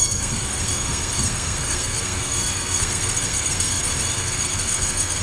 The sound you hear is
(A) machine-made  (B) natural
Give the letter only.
A